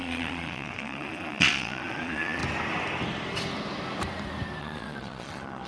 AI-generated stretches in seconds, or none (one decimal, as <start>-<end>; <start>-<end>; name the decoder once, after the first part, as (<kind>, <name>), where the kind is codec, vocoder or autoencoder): 0.0-2.4 (vocoder, Vocos); 4.6-5.7